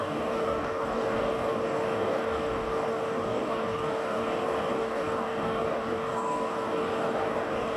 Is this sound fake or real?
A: fake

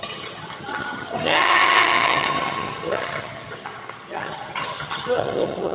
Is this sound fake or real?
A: fake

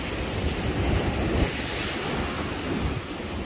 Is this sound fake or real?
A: real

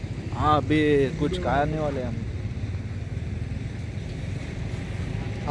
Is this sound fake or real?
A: real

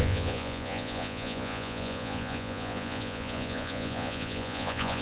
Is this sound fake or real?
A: fake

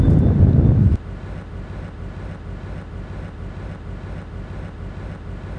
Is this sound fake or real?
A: real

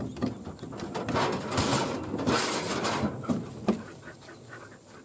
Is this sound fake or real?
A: real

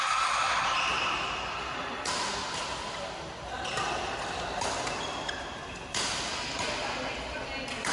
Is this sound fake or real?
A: real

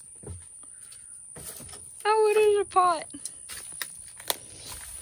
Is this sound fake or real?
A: real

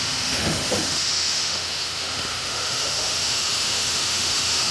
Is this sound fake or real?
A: fake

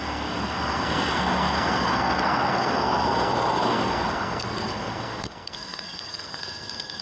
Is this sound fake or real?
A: fake